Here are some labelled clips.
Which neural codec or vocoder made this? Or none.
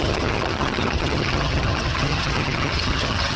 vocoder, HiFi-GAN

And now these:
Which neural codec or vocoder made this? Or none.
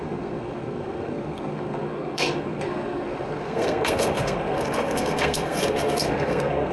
codec, SNAC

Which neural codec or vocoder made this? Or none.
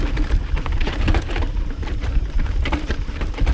vocoder, BigVGAN v2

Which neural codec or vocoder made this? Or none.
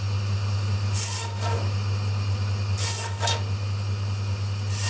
none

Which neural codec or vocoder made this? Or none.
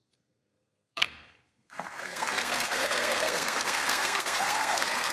codec, SNAC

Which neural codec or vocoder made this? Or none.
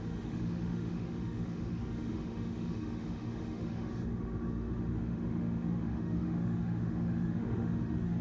autoencoder, DAC-VAE